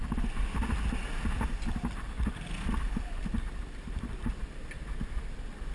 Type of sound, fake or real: real